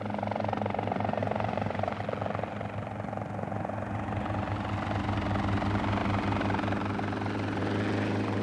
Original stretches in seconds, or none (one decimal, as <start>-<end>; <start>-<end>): 0.0-1.2; 2.0-8.4